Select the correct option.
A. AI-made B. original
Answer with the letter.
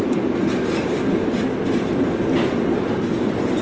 B